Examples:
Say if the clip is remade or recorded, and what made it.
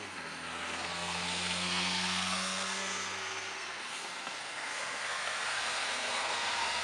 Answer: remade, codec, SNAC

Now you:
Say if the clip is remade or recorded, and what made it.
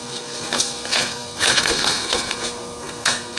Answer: remade, codec, SNAC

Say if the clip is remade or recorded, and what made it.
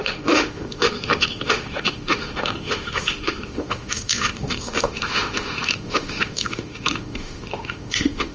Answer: remade, autoencoder, DAC-VAE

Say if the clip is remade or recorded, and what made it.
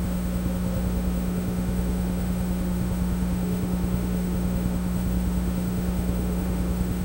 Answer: remade, autoencoder, DAC-VAE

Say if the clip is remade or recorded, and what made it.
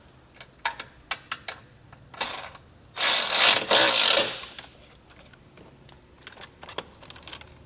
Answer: recorded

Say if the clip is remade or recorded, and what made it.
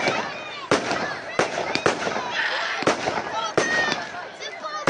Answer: remade, vocoder, BigVGAN v2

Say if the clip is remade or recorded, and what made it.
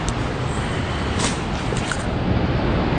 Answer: recorded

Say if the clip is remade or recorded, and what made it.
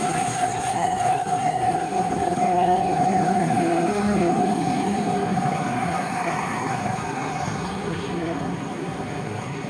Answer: remade, codec, SNAC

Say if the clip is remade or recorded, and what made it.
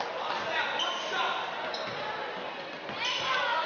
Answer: recorded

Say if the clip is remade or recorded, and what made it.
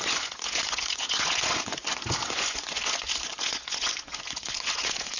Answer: remade, vocoder, Vocos